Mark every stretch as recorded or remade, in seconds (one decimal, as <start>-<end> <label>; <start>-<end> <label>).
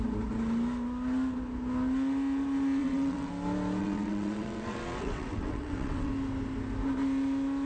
0.0-2.8 recorded; 2.8-3.3 remade; 3.3-3.8 recorded; 3.8-6.1 remade; 6.1-7.7 recorded